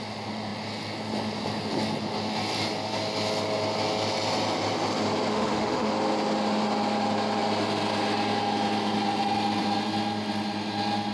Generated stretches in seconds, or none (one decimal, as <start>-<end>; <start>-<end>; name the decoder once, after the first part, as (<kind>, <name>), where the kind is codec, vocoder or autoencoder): 5.3-5.9 (autoencoder, DAC-VAE)